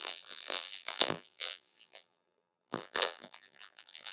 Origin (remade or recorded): remade